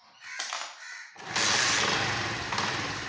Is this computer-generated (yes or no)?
no